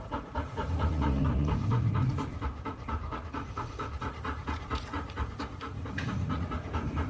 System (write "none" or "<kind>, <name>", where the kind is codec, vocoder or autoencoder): vocoder, Vocos